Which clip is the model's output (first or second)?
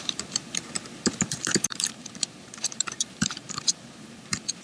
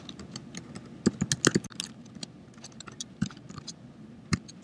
first